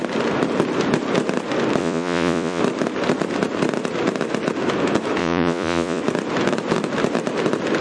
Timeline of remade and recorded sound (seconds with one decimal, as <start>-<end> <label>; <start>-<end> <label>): 0.0-1.8 recorded; 1.8-2.6 remade; 2.6-5.2 recorded; 5.2-6.0 remade; 6.0-7.8 recorded